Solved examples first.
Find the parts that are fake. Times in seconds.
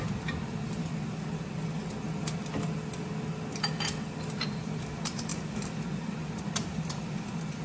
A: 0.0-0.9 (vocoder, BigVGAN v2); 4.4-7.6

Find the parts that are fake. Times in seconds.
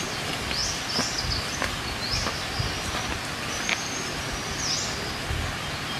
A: none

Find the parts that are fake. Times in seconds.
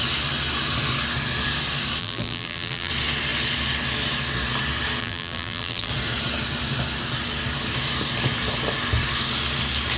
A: 2.0-2.9 (vocoder, BigVGAN v2); 5.0-5.9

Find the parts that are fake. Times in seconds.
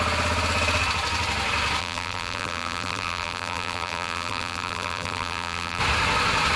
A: 1.8-5.8 (vocoder, BigVGAN v2)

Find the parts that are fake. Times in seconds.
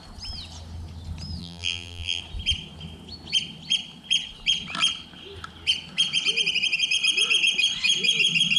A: 1.4-2.2 (vocoder, BigVGAN v2)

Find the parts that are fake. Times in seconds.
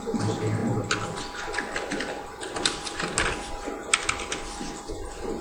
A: none